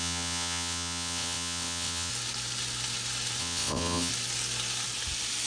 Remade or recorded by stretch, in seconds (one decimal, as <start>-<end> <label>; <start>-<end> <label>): 0.0-2.1 remade; 2.1-3.4 recorded; 3.4-4.1 remade; 4.1-5.5 recorded